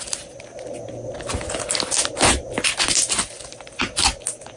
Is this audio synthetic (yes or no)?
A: no